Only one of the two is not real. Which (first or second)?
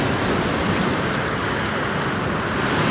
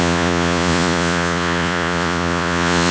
second